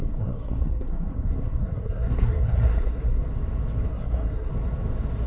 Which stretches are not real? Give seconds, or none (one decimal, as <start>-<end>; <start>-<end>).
0.0-3.2; 3.9-4.5